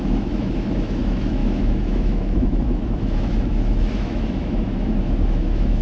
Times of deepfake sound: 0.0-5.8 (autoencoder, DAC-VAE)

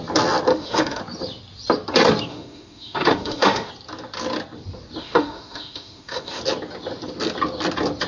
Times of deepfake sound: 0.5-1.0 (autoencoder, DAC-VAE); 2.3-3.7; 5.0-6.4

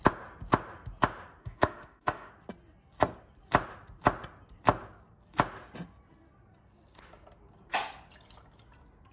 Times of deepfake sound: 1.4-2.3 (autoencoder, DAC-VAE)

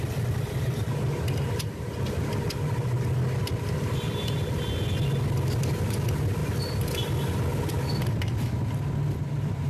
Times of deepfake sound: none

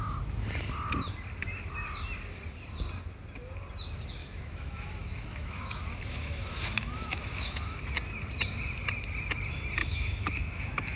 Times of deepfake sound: 4.2-7.8 (autoencoder, DAC-VAE); 9.8-11.0

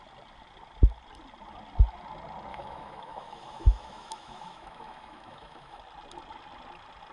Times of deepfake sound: 2.5-5.8 (autoencoder, DAC-VAE)